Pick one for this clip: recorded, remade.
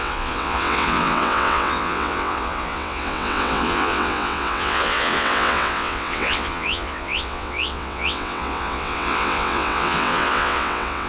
remade